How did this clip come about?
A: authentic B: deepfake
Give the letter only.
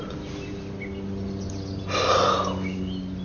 A